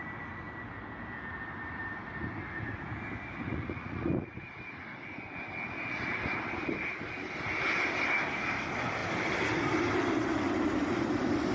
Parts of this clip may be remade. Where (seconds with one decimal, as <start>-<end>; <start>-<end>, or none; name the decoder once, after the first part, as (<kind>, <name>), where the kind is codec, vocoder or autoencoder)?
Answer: 3.5-4.6 (vocoder, Vocos)